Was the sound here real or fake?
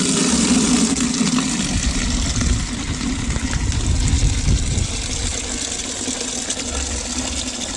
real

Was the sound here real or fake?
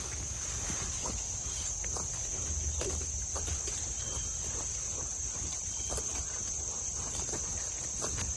real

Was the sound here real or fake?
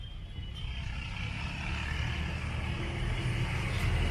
real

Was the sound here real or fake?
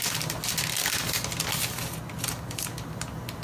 real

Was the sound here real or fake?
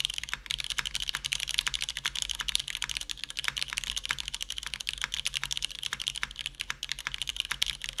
real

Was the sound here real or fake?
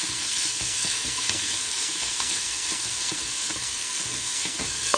fake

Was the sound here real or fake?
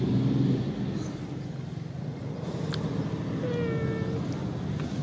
real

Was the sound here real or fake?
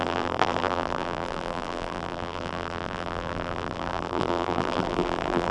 fake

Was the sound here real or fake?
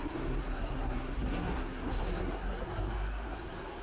fake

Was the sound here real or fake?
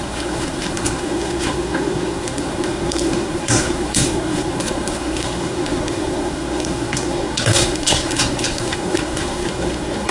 fake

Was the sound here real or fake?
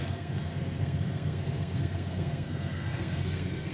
fake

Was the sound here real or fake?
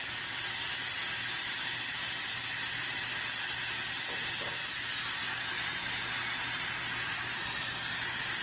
real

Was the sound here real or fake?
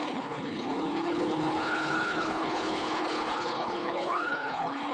fake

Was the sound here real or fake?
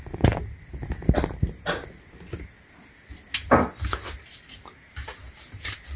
real